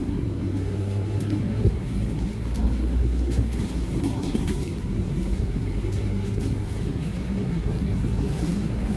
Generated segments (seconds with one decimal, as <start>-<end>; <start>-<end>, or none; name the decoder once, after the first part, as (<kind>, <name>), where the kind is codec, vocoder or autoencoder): 0.0-9.0 (codec, SNAC)